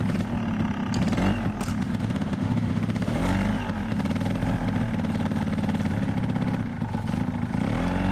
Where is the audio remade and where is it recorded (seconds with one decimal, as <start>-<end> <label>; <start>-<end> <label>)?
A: 0.0-1.8 recorded; 1.8-3.2 remade; 3.2-8.1 recorded